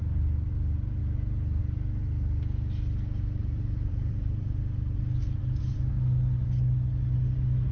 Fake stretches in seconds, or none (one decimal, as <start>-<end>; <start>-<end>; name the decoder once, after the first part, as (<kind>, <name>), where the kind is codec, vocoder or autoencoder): 3.4-4.6 (vocoder, BigVGAN v2)